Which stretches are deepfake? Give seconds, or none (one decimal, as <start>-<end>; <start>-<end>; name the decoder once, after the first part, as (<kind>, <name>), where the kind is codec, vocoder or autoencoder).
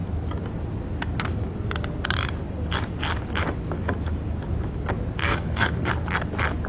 5.2-5.9 (codec, SNAC)